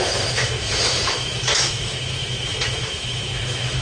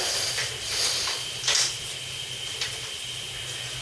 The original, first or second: second